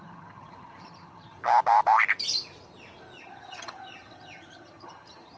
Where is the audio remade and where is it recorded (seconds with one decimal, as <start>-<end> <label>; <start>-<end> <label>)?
0.0-1.4 remade; 1.4-3.2 recorded; 3.2-5.4 remade